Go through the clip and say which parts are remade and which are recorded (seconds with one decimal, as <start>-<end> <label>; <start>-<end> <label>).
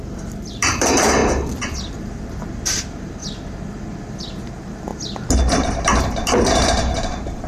0.0-1.2 remade; 1.2-1.9 recorded; 1.9-3.2 remade; 3.2-4.2 recorded; 4.2-4.9 remade; 4.9-6.0 recorded; 6.0-7.5 remade